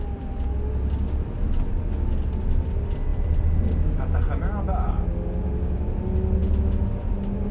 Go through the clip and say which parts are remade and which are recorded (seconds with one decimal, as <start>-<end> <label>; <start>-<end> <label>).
0.0-7.5 recorded

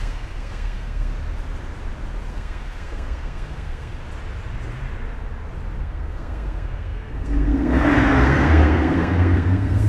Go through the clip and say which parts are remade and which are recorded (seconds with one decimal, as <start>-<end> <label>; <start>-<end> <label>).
0.0-1.1 remade; 1.1-2.3 recorded; 2.3-4.0 remade; 4.0-5.8 recorded; 5.8-9.9 remade

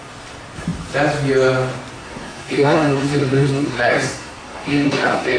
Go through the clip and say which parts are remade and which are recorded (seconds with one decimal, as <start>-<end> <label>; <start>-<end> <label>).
0.0-2.0 recorded; 2.0-5.4 remade